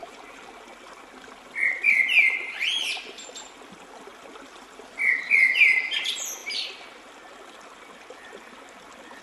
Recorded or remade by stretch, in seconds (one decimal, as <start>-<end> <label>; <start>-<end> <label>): 0.0-9.2 recorded

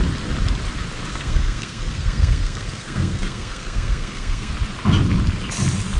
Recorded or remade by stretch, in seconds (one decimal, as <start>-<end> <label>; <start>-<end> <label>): 0.0-1.1 recorded; 1.1-4.5 remade; 4.5-6.0 recorded

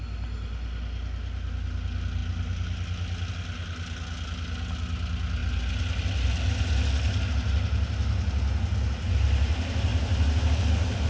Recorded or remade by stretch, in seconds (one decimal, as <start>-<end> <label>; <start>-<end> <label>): 0.0-11.1 recorded

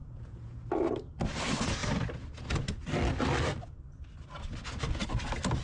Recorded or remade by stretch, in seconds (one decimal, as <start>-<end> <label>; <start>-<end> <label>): 0.0-0.6 remade; 0.6-5.6 recorded

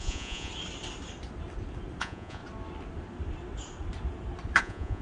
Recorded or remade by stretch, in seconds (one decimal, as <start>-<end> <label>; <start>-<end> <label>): 0.0-0.5 remade; 0.5-2.0 recorded; 2.0-2.4 remade; 2.4-4.6 recorded; 4.6-5.0 remade

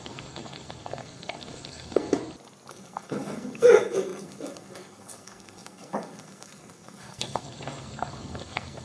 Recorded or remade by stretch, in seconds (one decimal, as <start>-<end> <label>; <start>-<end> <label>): 0.0-2.2 remade; 2.2-2.7 recorded; 2.7-8.8 remade

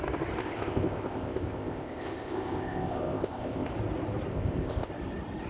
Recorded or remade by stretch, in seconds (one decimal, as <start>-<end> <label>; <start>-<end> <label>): 0.0-0.4 recorded; 0.4-3.7 remade; 3.7-4.3 recorded; 4.3-4.9 remade; 4.9-5.5 recorded

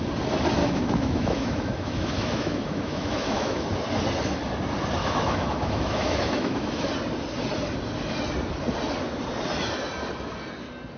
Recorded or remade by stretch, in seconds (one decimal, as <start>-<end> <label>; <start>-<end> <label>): 0.0-0.6 recorded; 0.6-3.7 remade; 3.7-5.0 recorded; 5.0-6.9 remade; 6.9-11.0 recorded